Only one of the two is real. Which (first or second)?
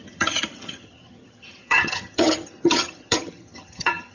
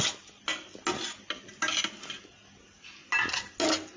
second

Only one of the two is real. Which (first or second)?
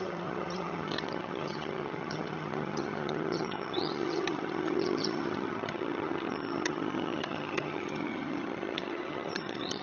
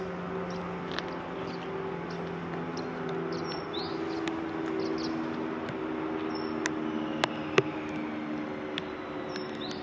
second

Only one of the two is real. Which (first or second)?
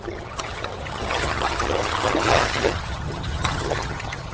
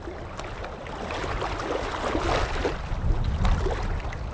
second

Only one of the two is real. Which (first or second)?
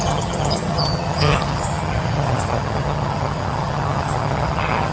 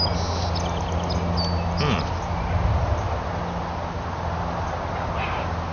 second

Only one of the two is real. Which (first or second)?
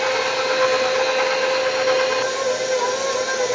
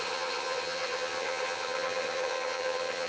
first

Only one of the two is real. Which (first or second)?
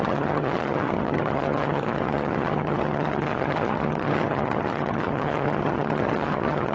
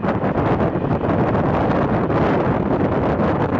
second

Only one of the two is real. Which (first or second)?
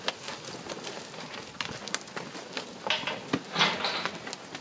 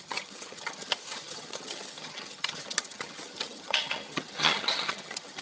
first